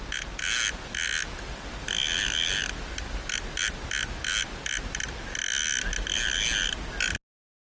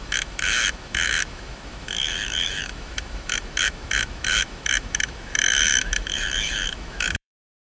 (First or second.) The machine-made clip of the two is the second